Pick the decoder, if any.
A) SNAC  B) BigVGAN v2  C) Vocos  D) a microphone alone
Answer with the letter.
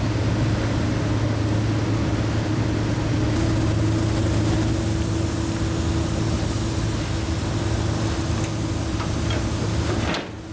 D